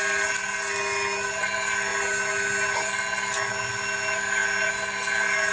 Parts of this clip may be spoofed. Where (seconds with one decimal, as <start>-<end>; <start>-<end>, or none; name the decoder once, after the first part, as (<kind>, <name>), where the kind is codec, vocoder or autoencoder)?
none